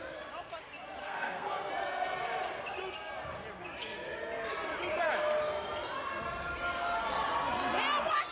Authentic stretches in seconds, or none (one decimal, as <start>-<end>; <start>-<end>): 0.0-1.0; 1.7-8.3